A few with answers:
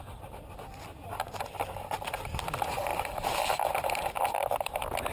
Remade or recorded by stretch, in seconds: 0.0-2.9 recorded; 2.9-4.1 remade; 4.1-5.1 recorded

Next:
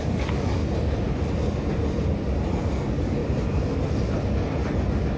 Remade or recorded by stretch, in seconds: 0.0-0.6 remade; 0.6-2.6 recorded; 2.6-3.2 remade; 3.2-5.2 recorded

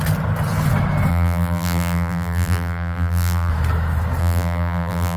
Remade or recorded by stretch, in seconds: 0.0-1.1 recorded; 1.1-3.5 remade; 3.5-4.2 recorded; 4.2-5.2 remade